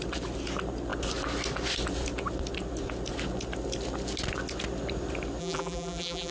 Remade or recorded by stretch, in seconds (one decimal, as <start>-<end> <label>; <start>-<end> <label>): 0.0-5.4 recorded; 5.4-6.3 remade

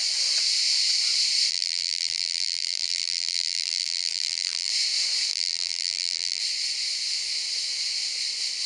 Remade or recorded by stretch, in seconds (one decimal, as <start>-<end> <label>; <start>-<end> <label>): 0.0-1.5 recorded; 1.5-4.7 remade; 4.7-5.3 recorded; 5.3-6.4 remade; 6.4-8.7 recorded

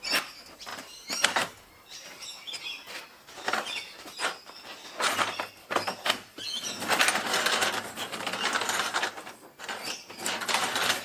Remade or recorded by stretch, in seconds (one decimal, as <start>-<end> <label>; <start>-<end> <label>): 0.0-0.7 recorded; 0.7-2.6 remade; 2.6-11.0 recorded